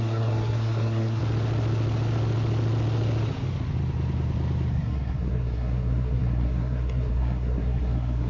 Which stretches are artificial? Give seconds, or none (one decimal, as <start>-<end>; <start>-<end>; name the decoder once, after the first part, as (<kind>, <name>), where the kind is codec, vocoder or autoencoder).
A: 0.0-1.2 (codec, SNAC); 4.7-8.3